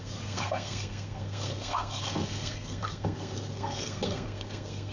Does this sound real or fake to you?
fake